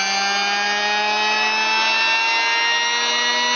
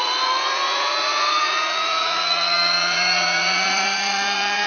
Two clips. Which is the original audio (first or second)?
first